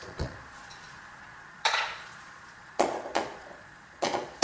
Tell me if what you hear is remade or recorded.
remade